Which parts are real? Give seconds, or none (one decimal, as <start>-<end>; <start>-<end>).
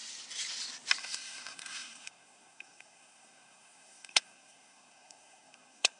0.0-1.0